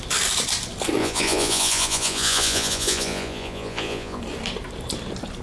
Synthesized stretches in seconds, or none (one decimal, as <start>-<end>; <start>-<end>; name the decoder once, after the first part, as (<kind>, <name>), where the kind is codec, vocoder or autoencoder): 1.0-4.2 (vocoder, Vocos)